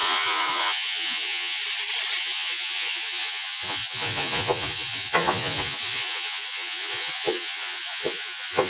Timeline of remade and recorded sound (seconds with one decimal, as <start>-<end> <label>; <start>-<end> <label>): 0.0-1.6 remade; 1.6-2.2 recorded; 2.2-8.7 remade